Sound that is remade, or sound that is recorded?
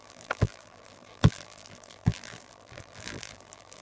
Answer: remade